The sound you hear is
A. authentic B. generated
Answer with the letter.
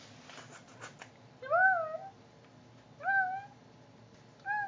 A